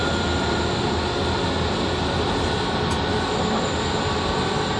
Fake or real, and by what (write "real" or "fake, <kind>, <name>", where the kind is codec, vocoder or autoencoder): real